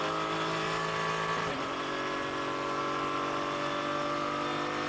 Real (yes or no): yes